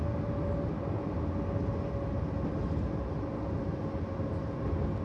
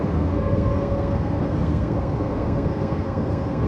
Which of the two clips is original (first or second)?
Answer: first